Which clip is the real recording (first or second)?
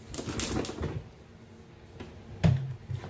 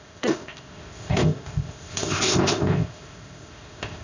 first